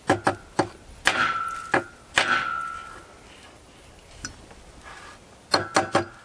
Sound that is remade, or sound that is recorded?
recorded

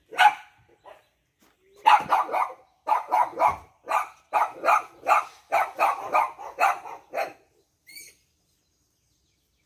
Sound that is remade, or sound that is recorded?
recorded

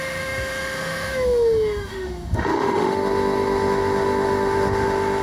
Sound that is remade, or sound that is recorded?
remade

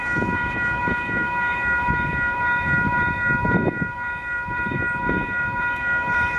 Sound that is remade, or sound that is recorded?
remade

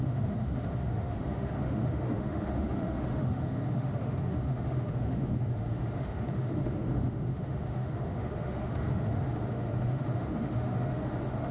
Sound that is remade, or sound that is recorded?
remade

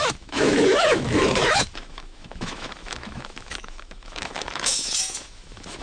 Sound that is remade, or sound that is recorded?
remade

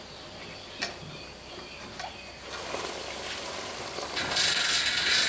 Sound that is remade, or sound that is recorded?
recorded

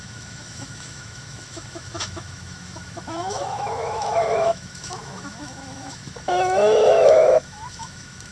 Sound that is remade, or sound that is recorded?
remade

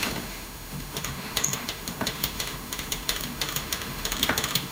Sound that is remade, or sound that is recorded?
remade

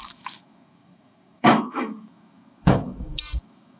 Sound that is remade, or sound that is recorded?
remade